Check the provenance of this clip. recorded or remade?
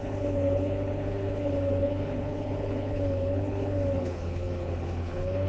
remade